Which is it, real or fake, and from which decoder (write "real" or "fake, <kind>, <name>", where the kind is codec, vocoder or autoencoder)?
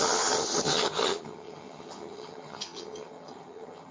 fake, vocoder, HiFi-GAN